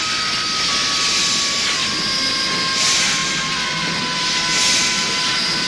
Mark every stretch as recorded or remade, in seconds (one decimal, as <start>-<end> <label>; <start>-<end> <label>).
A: 0.0-5.7 recorded